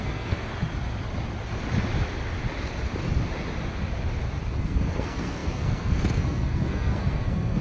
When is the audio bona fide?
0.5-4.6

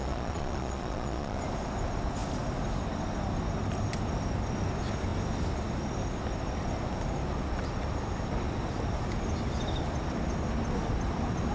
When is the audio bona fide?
1.4-11.5